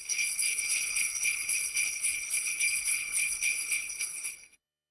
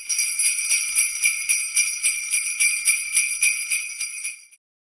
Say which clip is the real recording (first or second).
second